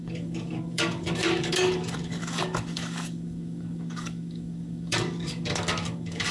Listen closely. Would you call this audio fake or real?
fake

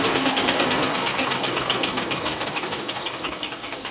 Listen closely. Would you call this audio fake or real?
fake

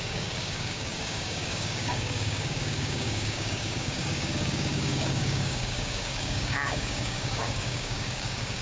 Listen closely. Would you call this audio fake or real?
fake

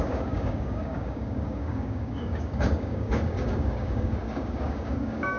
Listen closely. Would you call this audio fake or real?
fake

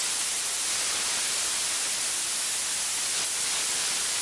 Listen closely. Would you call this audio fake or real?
real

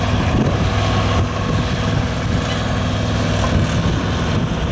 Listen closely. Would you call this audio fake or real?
real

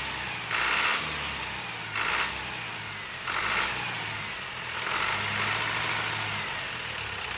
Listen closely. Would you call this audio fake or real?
real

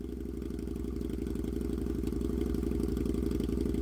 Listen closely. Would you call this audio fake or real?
real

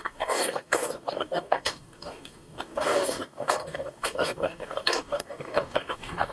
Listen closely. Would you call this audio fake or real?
fake